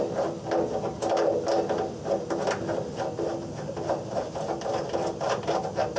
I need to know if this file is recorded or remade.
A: recorded